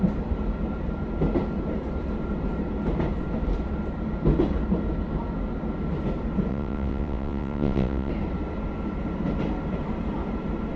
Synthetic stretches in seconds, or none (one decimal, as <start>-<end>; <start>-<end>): 6.5-8.1